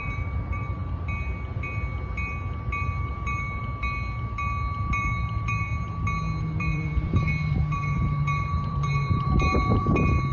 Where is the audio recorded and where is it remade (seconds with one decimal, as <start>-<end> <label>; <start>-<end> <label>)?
0.0-0.8 remade; 0.8-3.1 recorded; 3.1-3.6 remade; 3.6-4.9 recorded; 4.9-5.7 remade; 5.7-6.4 recorded; 6.4-10.3 remade